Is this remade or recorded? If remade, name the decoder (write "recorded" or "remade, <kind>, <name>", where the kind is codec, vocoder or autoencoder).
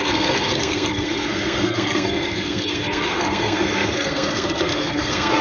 remade, codec, SNAC